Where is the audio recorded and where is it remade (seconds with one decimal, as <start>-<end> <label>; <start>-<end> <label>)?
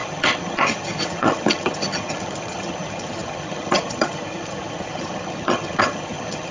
0.0-6.5 remade